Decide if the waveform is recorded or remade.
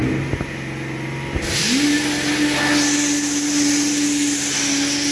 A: recorded